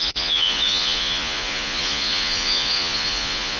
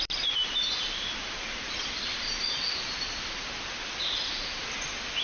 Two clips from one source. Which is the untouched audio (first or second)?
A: second